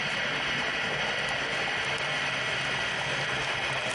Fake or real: real